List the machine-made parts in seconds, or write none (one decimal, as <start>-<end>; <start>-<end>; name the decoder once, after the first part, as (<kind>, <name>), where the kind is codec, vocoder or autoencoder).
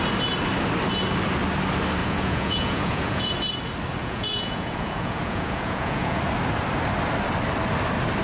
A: 2.0-3.3 (vocoder, Vocos); 4.0-6.2